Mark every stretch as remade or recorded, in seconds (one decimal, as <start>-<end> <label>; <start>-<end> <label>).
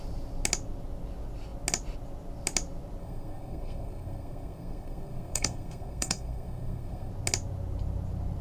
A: 0.0-3.0 recorded; 3.0-7.1 remade; 7.1-8.4 recorded